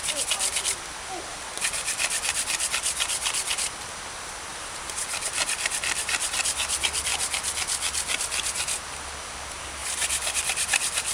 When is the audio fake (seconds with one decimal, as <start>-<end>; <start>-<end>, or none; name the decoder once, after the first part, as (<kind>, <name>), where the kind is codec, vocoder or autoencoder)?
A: 1.3-2.0 (vocoder, BigVGAN v2); 4.5-5.0; 9.8-10.4